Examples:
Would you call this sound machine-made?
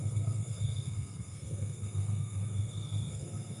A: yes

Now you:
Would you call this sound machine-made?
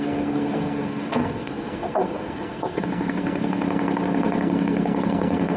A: yes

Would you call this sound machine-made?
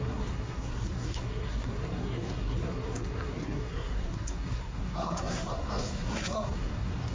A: yes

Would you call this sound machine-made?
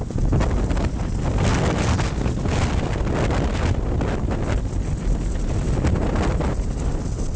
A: no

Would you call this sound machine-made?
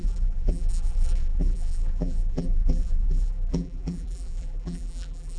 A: yes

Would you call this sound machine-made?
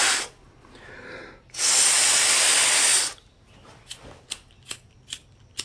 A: no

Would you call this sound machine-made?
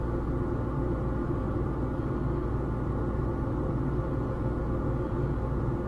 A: no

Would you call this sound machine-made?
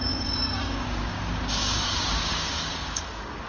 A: yes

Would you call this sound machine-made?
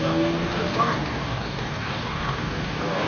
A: yes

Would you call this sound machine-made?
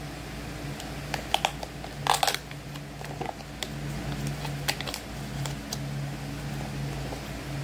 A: no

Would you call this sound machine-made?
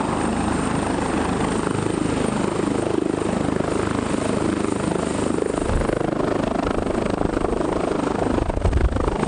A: no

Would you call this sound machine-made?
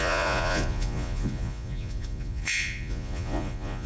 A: yes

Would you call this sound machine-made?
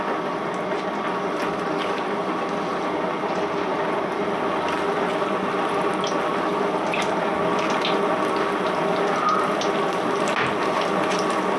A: no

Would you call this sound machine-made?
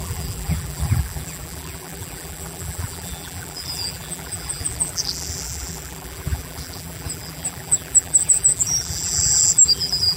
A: yes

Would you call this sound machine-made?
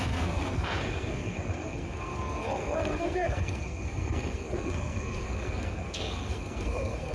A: yes